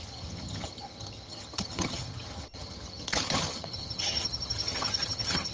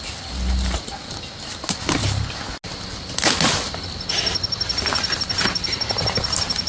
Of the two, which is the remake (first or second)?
first